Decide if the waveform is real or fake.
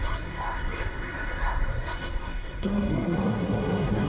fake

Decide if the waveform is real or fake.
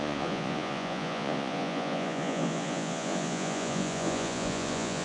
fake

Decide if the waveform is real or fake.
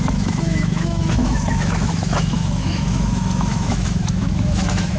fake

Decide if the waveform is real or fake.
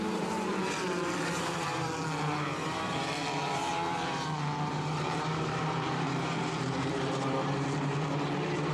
fake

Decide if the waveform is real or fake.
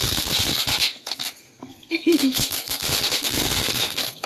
fake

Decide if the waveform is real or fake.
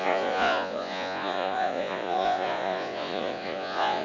fake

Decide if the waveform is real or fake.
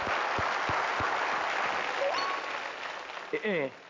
real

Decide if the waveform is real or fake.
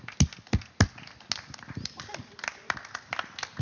real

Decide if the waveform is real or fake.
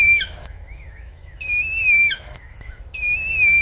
fake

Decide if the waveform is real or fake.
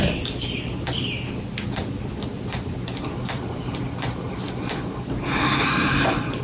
real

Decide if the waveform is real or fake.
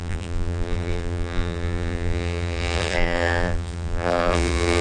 fake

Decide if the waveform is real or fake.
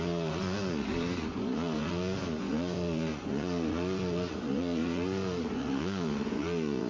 fake